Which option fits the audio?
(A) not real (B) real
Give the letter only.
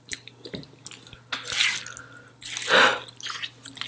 B